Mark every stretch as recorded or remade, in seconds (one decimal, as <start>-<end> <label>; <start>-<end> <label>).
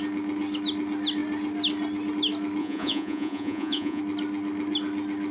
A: 0.0-2.6 recorded; 2.6-4.0 remade; 4.0-5.3 recorded